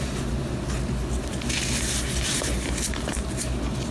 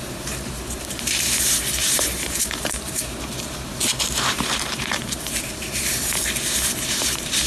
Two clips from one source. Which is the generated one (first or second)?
second